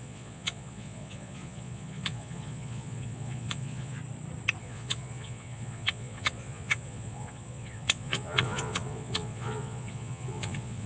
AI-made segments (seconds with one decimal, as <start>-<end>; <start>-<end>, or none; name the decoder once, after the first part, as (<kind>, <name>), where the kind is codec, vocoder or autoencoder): 0.0-4.0 (vocoder, Vocos); 4.6-10.9